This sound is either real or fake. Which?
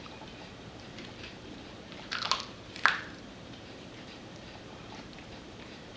fake